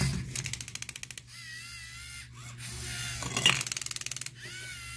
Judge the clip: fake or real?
real